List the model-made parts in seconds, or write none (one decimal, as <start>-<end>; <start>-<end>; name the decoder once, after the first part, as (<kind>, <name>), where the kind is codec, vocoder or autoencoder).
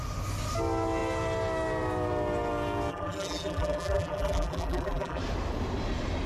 2.9-5.2 (vocoder, BigVGAN v2)